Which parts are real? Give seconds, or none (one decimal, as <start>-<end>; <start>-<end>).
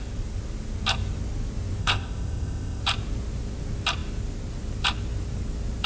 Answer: 0.0-1.8; 2.8-5.9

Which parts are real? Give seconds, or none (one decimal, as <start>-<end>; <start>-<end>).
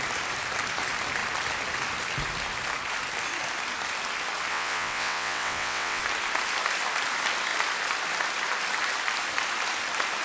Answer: 0.0-4.5; 6.0-10.2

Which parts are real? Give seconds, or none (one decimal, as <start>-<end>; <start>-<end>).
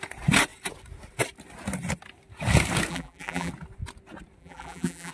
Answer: 0.0-2.9; 3.5-4.4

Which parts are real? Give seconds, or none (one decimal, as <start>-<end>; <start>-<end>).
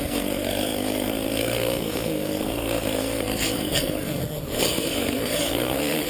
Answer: none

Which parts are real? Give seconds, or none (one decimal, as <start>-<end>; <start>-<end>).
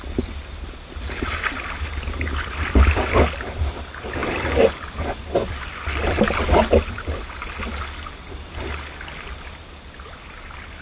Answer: 0.0-10.8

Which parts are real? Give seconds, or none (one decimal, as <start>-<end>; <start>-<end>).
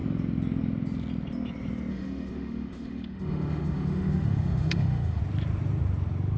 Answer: 0.0-1.9; 5.2-6.4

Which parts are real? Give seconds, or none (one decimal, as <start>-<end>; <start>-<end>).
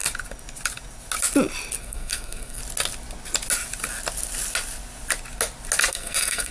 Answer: 0.0-1.8; 2.6-5.9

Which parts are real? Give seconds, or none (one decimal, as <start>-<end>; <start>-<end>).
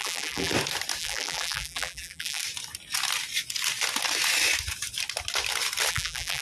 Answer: 0.5-1.0; 2.4-5.9